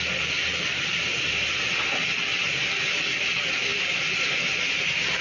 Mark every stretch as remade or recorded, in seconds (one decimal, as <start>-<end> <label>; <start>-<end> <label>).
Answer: 0.0-5.2 recorded